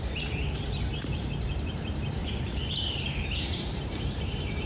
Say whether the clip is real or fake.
fake